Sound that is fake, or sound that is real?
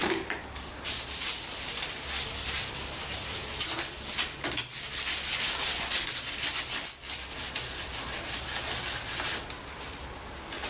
real